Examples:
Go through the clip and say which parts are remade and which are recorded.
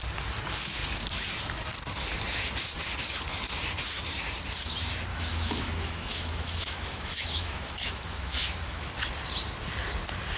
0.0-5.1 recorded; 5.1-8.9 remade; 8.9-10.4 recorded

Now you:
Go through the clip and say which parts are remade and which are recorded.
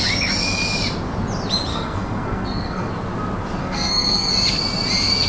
0.0-1.7 recorded; 1.7-2.9 remade; 2.9-3.6 recorded; 3.6-4.3 remade; 4.3-5.3 recorded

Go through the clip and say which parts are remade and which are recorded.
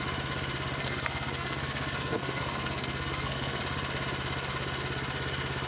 0.0-0.8 recorded; 0.8-3.6 remade; 3.6-5.7 recorded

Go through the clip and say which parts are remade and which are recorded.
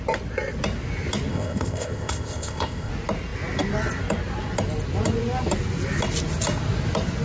0.0-1.3 recorded; 1.3-2.9 remade; 2.9-7.2 recorded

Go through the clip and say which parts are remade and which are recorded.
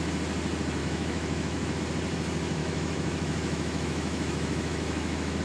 0.0-0.8 recorded; 0.8-1.8 remade; 1.8-2.6 recorded; 2.6-5.4 remade